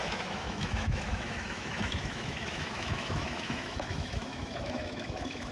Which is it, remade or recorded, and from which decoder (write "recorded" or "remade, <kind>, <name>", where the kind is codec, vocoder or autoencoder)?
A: remade, autoencoder, DAC-VAE